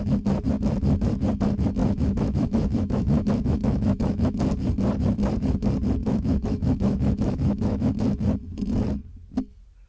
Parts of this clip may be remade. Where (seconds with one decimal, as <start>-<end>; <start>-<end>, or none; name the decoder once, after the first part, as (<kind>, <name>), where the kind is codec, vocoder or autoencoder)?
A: 1.8-4.4 (autoencoder, DAC-VAE); 6.0-7.9

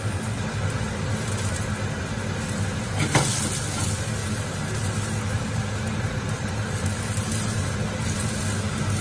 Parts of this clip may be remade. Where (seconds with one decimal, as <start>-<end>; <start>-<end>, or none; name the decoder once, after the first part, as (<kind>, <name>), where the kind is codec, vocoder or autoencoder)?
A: none

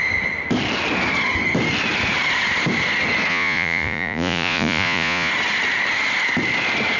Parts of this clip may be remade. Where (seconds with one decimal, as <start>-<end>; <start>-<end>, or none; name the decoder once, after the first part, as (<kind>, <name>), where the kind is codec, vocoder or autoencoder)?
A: 3.3-5.3 (vocoder, Vocos)

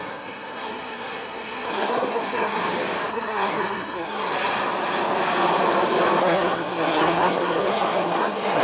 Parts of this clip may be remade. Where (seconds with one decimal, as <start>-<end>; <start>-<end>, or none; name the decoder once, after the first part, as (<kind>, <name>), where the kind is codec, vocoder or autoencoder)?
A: 0.0-2.6 (codec, SNAC); 3.1-4.3; 6.2-8.6